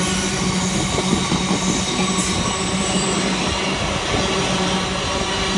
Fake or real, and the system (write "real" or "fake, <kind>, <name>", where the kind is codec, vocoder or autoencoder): real